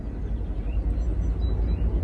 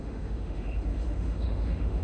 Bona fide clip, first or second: first